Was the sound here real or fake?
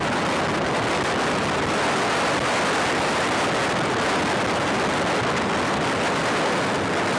real